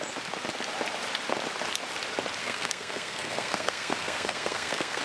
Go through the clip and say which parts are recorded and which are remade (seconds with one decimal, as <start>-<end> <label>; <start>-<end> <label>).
0.0-2.4 recorded; 2.4-5.0 remade